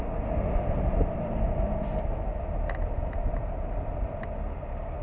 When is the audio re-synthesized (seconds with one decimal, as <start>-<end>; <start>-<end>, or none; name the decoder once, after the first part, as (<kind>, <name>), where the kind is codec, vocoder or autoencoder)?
none